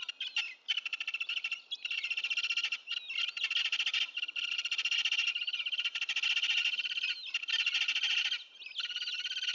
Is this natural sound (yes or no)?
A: yes